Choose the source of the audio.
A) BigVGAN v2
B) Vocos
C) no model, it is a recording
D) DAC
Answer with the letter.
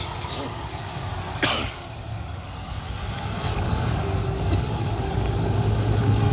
D